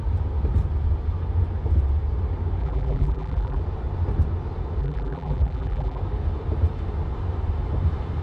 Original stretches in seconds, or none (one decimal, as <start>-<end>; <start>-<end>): 0.0-2.6; 3.6-4.8; 6.0-8.2